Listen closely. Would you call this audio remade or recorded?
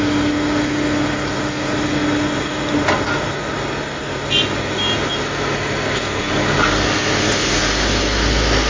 recorded